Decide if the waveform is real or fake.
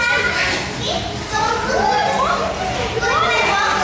real